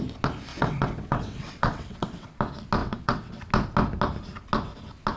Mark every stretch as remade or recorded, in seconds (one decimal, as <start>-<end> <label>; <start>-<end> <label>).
0.0-0.5 recorded; 0.5-2.3 remade; 2.3-2.8 recorded; 2.8-3.4 remade; 3.4-5.2 recorded